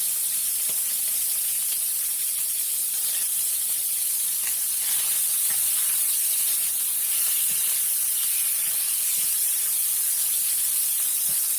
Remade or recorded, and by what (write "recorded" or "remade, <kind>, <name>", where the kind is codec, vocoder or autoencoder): remade, vocoder, BigVGAN v2